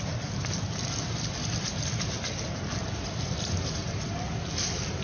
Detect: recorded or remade recorded